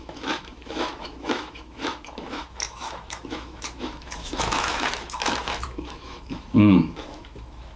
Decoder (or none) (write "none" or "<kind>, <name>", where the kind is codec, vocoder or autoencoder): autoencoder, DAC-VAE